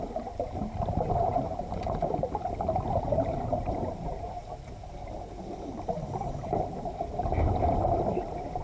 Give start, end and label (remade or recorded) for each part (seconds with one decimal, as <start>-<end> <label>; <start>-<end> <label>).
0.0-4.4 remade; 4.4-8.1 recorded; 8.1-8.6 remade